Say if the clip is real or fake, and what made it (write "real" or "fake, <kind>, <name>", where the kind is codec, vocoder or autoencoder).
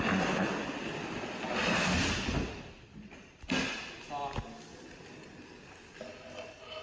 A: real